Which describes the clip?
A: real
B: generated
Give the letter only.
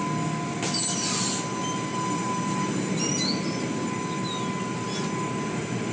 A